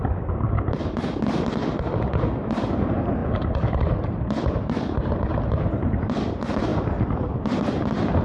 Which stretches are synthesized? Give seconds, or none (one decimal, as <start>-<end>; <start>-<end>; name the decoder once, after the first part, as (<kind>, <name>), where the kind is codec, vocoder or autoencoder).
none